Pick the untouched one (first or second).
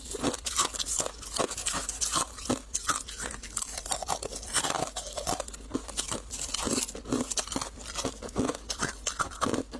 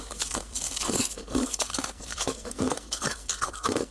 first